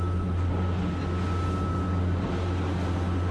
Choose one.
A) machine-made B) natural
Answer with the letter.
B